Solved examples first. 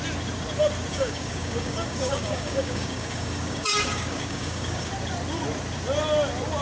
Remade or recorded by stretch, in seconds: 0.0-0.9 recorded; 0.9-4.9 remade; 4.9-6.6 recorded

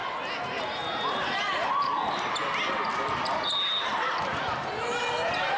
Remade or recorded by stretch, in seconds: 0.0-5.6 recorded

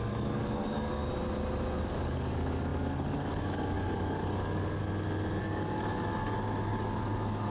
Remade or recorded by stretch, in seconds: 0.0-1.0 remade; 1.0-1.8 recorded; 1.8-4.8 remade; 4.8-5.4 recorded; 5.4-7.5 remade

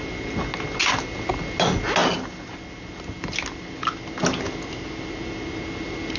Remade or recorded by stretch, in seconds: 0.0-6.2 recorded

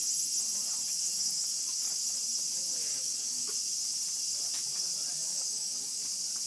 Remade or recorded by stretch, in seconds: 0.0-0.9 recorded; 0.9-2.0 remade; 2.0-2.9 recorded; 2.9-3.6 remade; 3.6-5.2 recorded; 5.2-6.0 remade; 6.0-6.5 recorded